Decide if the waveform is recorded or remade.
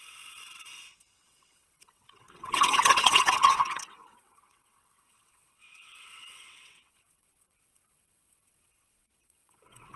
remade